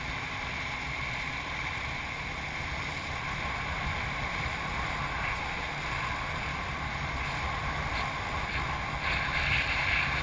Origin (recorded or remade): recorded